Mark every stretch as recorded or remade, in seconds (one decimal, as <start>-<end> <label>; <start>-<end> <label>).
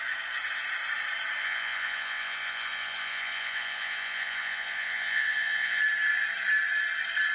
0.0-1.4 recorded; 1.4-5.8 remade; 5.8-7.3 recorded